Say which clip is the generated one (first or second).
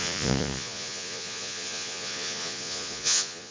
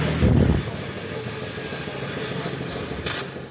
first